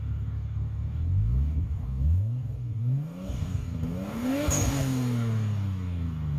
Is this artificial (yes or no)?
yes